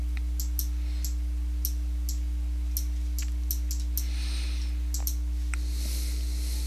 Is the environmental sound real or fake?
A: real